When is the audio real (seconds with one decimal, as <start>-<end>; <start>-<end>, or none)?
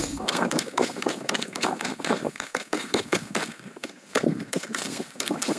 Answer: none